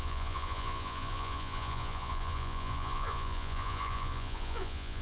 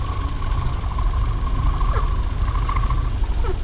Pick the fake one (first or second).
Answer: first